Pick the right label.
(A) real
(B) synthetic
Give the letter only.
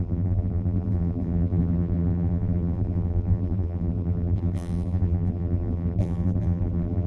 B